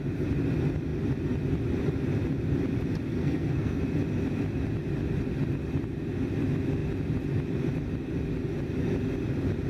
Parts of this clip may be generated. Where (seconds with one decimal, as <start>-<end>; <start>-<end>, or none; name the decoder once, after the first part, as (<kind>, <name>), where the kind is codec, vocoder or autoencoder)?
3.1-3.8 (codec, SNAC)